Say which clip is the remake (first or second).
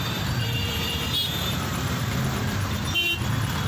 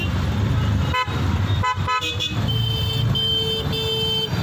first